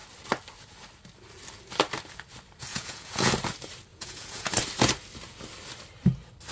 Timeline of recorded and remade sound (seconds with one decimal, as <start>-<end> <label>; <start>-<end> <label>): 0.0-2.7 recorded; 2.7-3.3 remade; 3.3-3.9 recorded; 3.9-4.5 remade; 4.5-6.5 recorded